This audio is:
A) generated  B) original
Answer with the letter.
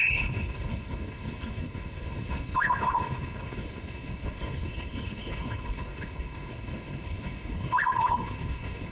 A